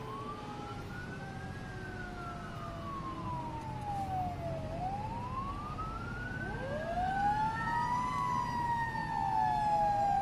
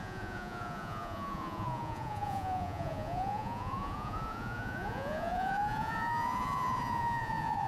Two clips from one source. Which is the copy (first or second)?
second